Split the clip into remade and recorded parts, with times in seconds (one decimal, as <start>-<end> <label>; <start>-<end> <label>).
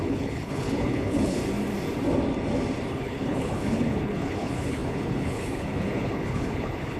0.0-1.4 remade; 1.4-2.9 recorded; 2.9-7.0 remade